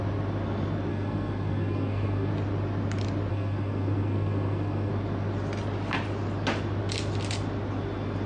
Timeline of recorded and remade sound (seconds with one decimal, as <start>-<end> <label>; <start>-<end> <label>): 0.0-0.9 recorded; 0.9-2.3 remade; 2.3-3.3 recorded; 3.3-4.9 remade; 4.9-8.3 recorded